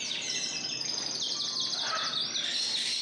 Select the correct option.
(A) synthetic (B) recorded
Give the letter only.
B